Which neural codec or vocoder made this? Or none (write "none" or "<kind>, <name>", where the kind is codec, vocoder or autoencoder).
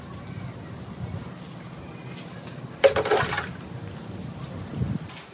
none